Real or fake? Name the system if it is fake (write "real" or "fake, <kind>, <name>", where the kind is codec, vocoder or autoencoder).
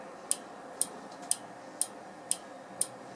real